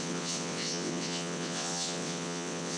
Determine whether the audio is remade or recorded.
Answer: remade